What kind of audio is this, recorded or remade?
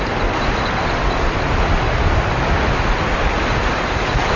recorded